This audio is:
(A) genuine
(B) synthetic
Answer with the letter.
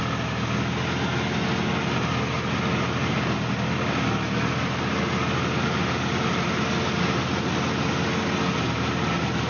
A